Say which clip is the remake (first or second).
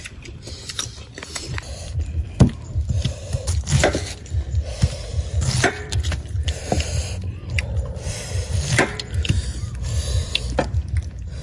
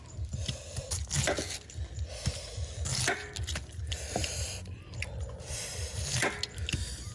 first